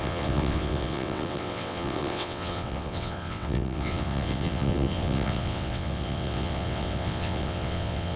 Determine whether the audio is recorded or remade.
remade